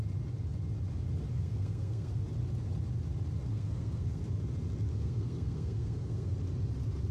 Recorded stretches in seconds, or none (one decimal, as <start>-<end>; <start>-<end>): 0.0-1.3; 2.2-3.5; 4.2-4.9; 6.4-7.1

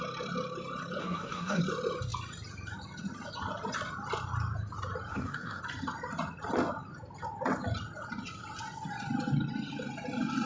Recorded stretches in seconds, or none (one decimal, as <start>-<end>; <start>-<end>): 0.0-1.0; 1.6-5.1; 5.6-10.5